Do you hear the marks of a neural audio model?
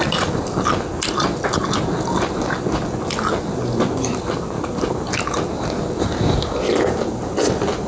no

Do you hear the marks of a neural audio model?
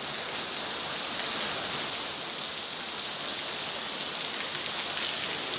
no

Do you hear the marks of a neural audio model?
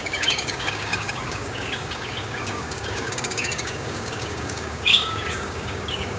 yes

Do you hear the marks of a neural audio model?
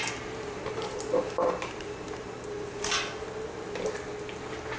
no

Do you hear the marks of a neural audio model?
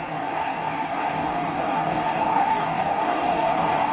yes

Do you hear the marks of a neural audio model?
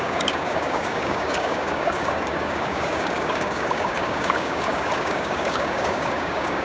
yes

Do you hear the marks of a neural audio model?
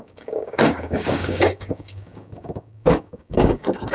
yes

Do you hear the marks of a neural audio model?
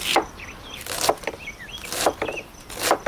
no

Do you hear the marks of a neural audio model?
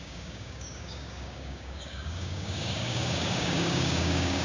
yes